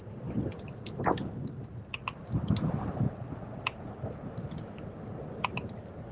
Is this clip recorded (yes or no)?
yes